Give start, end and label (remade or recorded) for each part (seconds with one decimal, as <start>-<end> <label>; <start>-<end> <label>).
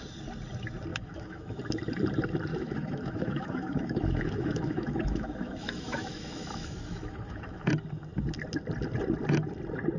0.0-0.9 recorded; 0.9-1.6 remade; 1.6-2.5 recorded; 2.5-7.7 remade; 7.7-10.0 recorded